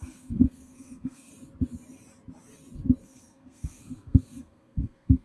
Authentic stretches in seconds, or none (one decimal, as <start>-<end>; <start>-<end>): 1.3-3.0